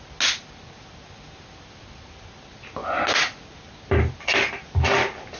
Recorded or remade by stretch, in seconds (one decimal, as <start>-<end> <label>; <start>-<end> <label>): 0.0-5.4 recorded